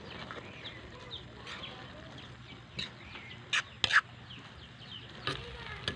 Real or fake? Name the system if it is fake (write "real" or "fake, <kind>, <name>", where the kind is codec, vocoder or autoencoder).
real